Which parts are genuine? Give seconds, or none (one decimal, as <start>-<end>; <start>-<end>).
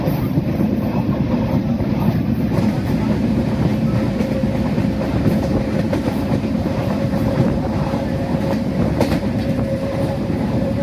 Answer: none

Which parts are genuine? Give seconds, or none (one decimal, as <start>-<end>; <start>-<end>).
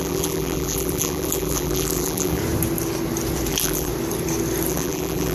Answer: 2.4-3.5; 3.9-4.7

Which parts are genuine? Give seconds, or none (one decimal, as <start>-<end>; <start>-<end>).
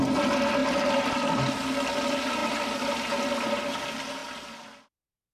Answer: 0.0-0.6; 1.4-2.4; 3.0-5.3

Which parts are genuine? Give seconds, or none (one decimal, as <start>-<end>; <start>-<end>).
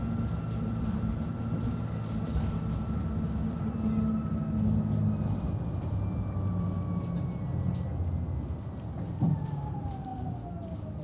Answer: 0.0-11.0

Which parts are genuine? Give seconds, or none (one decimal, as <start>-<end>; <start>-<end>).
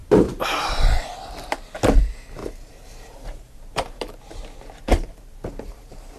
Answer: 0.7-2.4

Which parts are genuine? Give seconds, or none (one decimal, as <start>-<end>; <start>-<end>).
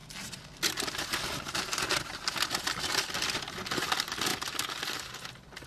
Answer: 0.0-5.7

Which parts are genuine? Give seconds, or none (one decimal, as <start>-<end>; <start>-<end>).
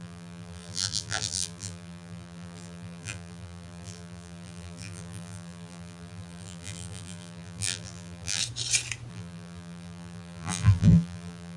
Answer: 8.4-9.1